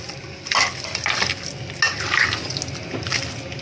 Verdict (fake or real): real